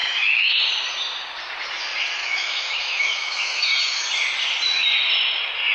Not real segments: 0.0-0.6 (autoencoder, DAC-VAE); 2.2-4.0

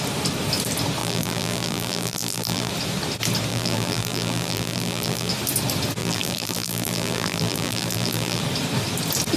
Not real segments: 1.0-2.7 (vocoder, BigVGAN v2); 3.5-5.3; 6.0-8.4

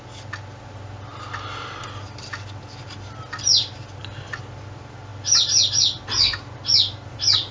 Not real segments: none

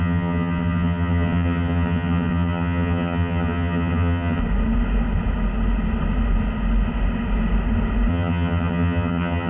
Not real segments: 0.0-4.4 (vocoder, HiFi-GAN); 8.1-9.5

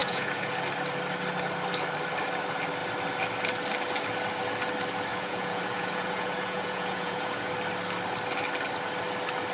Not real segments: 0.0-0.5 (vocoder, Vocos); 5.1-7.5

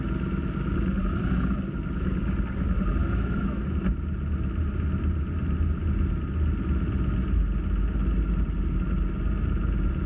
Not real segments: 3.0-3.6 (autoencoder, DAC-VAE)

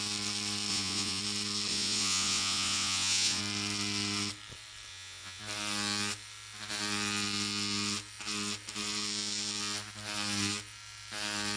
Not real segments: 0.7-1.2 (vocoder, Vocos); 1.7-3.4; 4.9-5.4